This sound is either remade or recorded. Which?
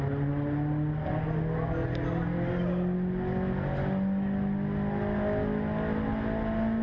recorded